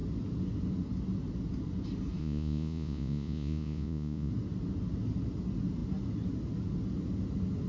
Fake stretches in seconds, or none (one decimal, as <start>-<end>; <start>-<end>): 2.2-4.3